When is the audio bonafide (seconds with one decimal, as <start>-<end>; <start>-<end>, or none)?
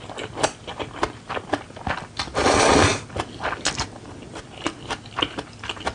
0.0-5.9